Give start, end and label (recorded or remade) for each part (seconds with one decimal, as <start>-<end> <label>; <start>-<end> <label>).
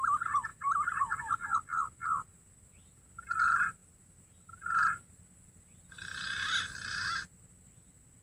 0.0-8.2 recorded